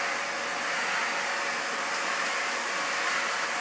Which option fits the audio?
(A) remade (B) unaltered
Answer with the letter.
B